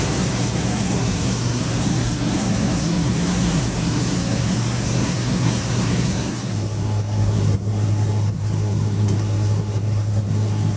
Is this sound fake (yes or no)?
yes